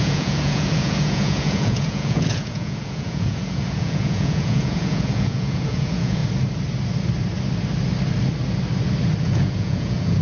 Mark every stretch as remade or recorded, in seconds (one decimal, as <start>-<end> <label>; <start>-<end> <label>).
0.0-6.2 remade; 6.2-9.2 recorded; 9.2-10.2 remade